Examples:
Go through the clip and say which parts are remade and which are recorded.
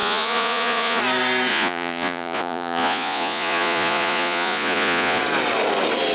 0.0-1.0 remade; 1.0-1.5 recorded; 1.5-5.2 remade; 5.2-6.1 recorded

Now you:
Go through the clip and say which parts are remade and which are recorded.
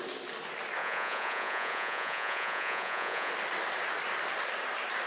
0.0-0.8 recorded; 0.8-3.3 remade; 3.3-5.1 recorded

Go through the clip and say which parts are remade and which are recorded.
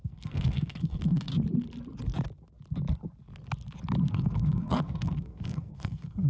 0.0-1.3 remade; 1.3-4.1 recorded; 4.1-6.3 remade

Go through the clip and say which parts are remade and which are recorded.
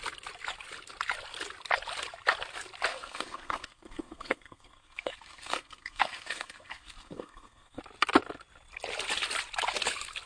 0.0-2.9 recorded; 2.9-7.8 remade; 7.8-10.3 recorded